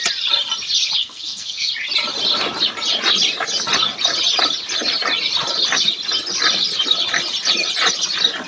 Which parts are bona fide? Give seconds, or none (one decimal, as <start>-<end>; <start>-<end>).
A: 0.0-1.0; 1.7-8.5